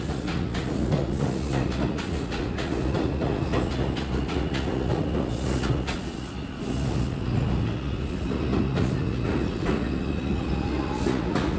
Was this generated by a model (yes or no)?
yes